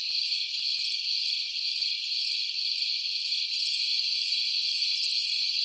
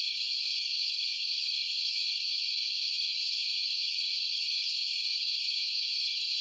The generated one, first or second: second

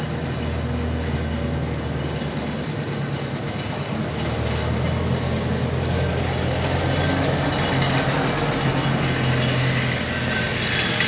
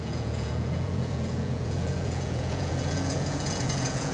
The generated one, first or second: second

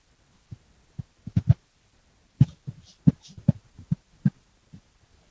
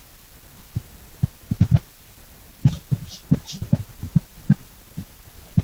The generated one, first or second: second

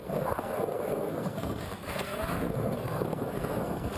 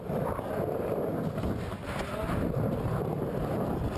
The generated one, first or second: first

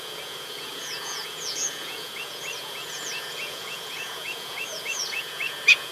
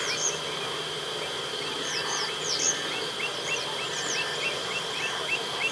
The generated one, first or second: first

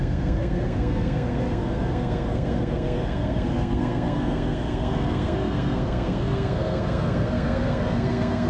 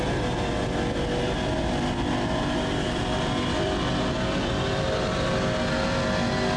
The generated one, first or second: first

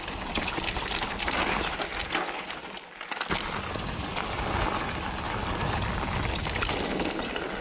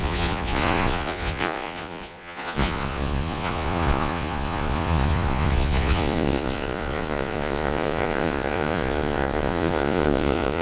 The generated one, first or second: second